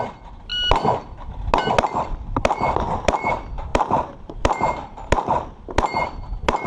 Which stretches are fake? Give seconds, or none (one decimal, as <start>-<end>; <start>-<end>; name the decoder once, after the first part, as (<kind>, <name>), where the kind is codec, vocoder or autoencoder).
0.0-0.5 (vocoder, BigVGAN v2); 2.0-4.9; 5.5-6.7